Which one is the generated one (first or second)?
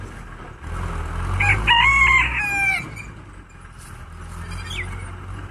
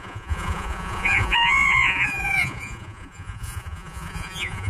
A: second